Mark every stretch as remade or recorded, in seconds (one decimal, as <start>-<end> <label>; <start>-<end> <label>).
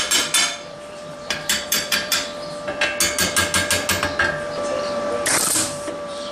0.0-2.1 remade; 2.1-5.4 recorded; 5.4-6.3 remade